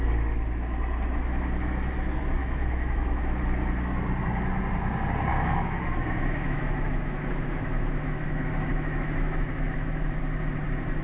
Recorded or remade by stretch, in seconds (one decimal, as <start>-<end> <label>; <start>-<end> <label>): 0.0-2.4 recorded; 2.4-3.2 remade; 3.2-5.3 recorded; 5.3-10.2 remade; 10.2-11.0 recorded